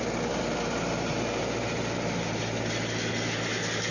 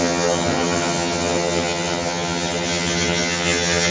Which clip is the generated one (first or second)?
second